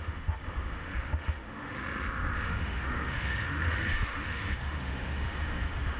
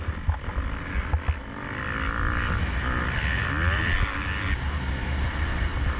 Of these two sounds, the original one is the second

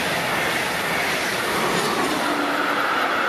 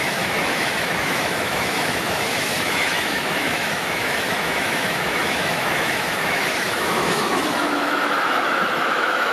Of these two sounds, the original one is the first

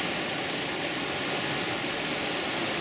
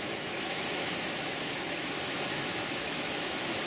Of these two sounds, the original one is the first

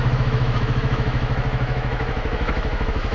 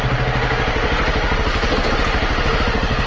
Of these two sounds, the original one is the second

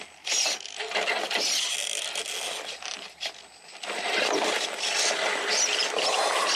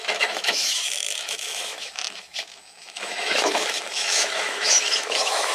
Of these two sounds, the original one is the first